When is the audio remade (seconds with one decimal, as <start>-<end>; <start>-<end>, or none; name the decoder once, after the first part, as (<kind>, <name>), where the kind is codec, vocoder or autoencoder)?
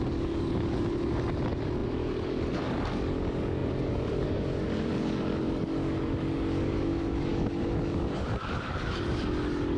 0.0-9.8 (codec, DAC)